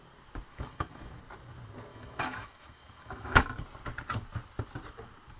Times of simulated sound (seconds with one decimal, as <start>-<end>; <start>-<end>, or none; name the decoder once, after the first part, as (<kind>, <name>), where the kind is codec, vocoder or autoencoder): 0.5-1.2 (autoencoder, DAC-VAE); 1.9-3.4